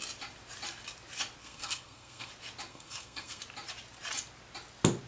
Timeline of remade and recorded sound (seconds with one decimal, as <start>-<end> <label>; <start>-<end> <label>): 0.0-1.4 recorded; 1.4-2.3 remade; 2.3-2.7 recorded; 2.7-3.4 remade; 3.4-5.1 recorded

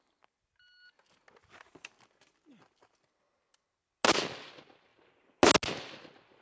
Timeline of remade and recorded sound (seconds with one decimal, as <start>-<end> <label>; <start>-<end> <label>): 0.0-6.4 recorded